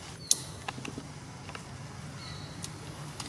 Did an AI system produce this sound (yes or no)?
no